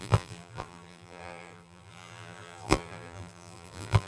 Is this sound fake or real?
fake